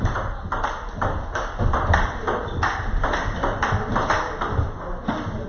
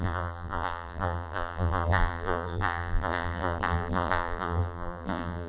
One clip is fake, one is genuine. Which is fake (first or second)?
second